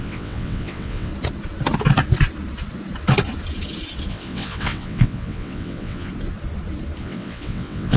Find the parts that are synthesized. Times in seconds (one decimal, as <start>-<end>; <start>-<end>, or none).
0.0-1.1; 4.1-6.1; 7.0-8.0